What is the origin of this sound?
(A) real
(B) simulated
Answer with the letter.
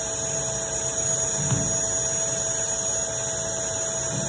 A